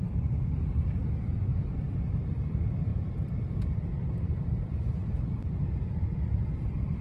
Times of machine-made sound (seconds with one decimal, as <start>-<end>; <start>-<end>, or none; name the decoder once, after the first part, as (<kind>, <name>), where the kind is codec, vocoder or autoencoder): 0.0-1.0 (vocoder, BigVGAN v2); 2.5-4.0; 4.6-7.0